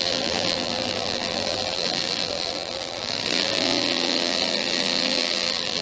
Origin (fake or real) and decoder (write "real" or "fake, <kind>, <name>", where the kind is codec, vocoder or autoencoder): fake, vocoder, BigVGAN v2